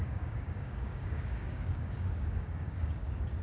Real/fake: fake